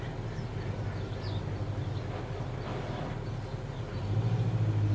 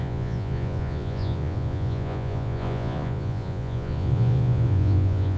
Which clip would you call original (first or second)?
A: first